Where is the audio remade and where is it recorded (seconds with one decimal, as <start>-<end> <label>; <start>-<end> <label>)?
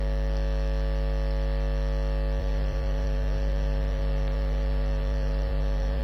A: 0.0-2.4 recorded; 2.4-6.0 remade